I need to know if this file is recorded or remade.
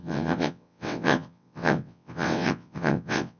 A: remade